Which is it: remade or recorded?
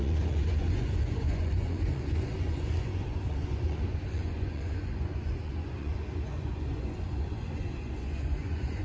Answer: remade